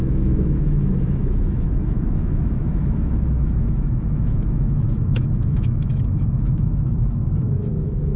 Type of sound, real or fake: fake